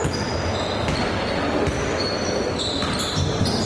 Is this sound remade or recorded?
recorded